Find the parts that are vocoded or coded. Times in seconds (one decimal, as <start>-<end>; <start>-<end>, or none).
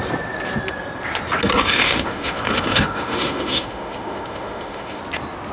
1.7-5.0